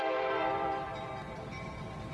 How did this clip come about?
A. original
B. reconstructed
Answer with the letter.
B